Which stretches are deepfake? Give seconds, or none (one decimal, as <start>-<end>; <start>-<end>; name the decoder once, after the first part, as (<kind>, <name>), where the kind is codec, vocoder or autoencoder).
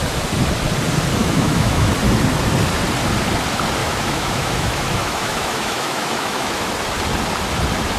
1.2-1.9 (autoencoder, DAC-VAE); 3.8-6.7